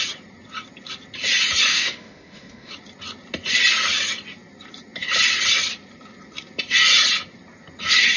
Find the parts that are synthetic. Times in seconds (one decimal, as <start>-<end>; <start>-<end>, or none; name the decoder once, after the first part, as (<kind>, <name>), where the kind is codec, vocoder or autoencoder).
1.7-2.7 (autoencoder, DAC-VAE)